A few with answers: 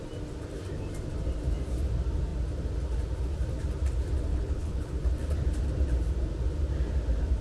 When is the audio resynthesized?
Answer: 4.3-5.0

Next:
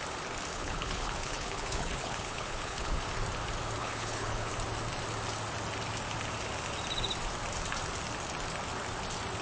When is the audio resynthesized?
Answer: 0.5-3.0; 3.8-4.5

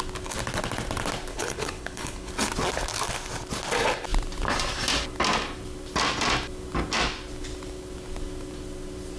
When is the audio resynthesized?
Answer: 1.3-2.3

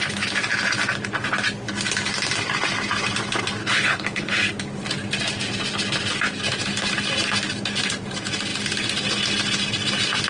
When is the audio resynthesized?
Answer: 3.6-4.5

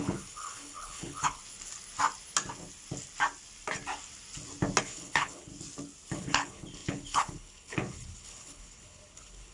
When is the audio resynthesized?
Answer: 0.0-1.4; 4.8-5.5; 6.1-9.5

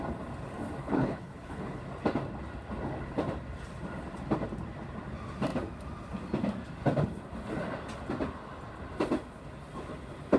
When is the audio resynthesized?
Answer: 0.8-1.8

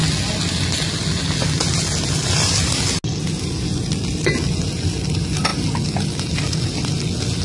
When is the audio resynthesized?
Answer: none